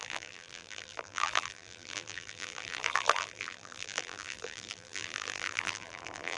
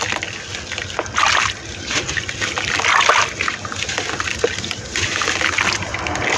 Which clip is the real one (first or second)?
second